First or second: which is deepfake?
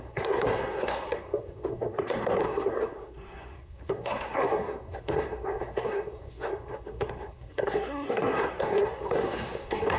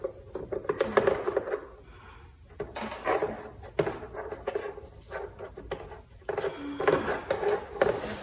first